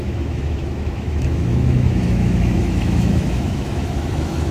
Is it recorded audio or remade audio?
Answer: remade